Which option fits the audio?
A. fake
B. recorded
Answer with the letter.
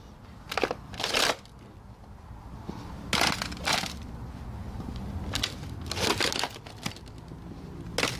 B